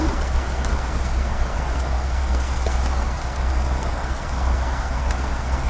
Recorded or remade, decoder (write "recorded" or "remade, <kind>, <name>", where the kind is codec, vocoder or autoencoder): remade, codec, SNAC